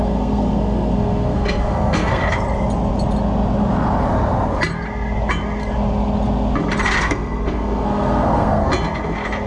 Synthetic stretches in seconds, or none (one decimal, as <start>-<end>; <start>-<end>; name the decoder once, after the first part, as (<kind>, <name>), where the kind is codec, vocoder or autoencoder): 0.0-2.2 (codec, SNAC); 7.0-8.7